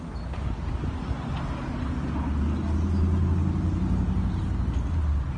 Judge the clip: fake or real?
real